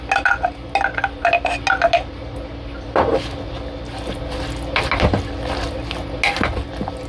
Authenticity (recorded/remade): recorded